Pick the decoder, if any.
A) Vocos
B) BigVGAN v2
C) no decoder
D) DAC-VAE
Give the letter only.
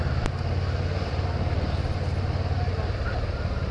B